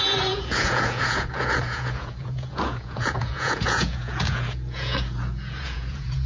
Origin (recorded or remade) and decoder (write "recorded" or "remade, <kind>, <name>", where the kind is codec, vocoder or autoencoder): remade, vocoder, Vocos